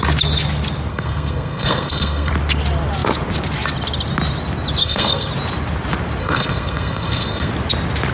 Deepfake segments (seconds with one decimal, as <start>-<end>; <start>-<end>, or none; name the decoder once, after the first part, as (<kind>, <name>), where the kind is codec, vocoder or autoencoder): 0.9-2.3 (codec, SNAC); 4.8-5.3; 6.2-7.5